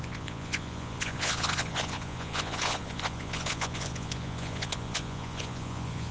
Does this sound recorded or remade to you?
remade